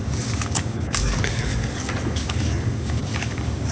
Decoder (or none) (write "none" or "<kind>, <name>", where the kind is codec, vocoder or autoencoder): codec, DAC